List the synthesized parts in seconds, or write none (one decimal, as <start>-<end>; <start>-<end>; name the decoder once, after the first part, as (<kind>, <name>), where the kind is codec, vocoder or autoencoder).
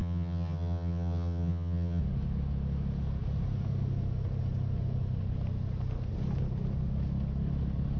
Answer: 0.0-2.0 (vocoder, HiFi-GAN)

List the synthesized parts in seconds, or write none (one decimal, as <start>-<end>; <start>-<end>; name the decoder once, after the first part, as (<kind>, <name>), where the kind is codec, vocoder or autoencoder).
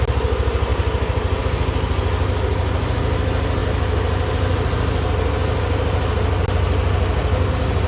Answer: none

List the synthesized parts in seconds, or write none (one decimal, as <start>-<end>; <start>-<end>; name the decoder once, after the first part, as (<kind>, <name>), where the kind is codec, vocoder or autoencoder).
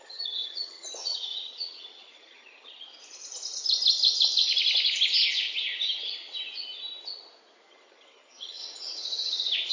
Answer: 0.0-2.9 (vocoder, HiFi-GAN); 7.7-8.6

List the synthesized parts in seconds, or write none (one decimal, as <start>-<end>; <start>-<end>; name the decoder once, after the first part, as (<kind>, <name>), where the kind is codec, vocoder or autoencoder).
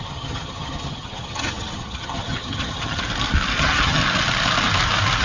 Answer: 0.0-3.0 (vocoder, HiFi-GAN); 3.6-4.0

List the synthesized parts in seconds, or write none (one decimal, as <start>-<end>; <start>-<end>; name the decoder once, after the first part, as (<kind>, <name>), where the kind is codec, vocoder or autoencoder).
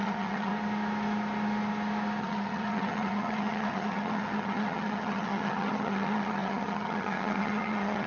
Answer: 0.0-0.5 (vocoder, HiFi-GAN); 2.2-8.1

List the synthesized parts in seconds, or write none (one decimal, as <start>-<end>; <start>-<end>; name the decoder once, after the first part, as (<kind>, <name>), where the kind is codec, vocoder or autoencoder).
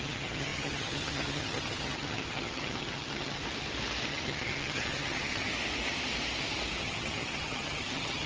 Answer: 0.0-3.4 (vocoder, HiFi-GAN); 4.1-5.5; 6.8-8.3